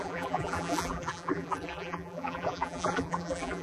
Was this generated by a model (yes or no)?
yes